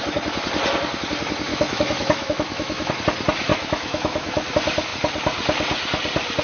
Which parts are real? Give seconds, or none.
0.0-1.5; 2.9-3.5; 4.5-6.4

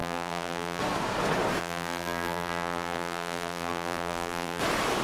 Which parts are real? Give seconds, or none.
0.8-1.6; 4.6-5.0

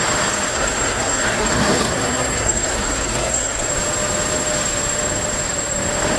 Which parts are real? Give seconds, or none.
0.0-0.5; 3.7-6.2